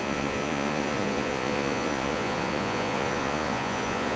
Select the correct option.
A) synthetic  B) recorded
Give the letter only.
A